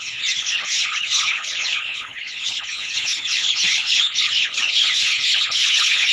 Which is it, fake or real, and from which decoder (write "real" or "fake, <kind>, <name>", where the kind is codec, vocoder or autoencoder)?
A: fake, codec, HILCodec